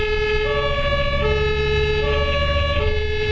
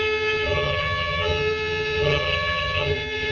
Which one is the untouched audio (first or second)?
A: first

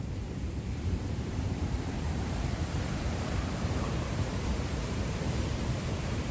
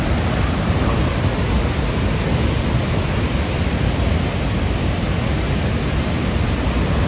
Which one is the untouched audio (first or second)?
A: second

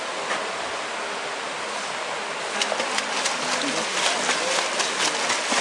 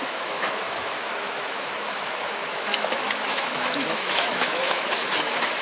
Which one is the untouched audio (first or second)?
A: first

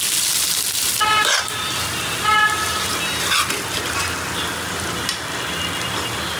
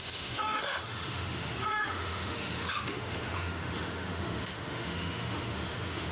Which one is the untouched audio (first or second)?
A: first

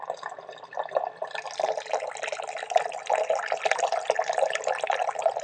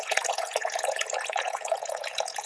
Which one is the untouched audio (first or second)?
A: first